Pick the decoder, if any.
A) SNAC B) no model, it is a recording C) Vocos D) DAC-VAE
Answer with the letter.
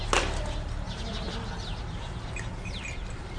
B